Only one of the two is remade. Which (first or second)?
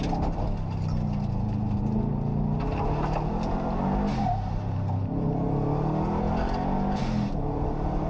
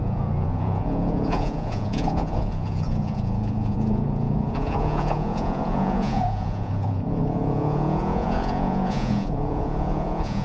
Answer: second